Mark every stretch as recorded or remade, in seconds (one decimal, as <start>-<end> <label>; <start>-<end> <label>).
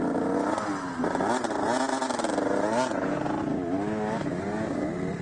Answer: 0.0-3.5 recorded; 3.5-4.4 remade; 4.4-5.2 recorded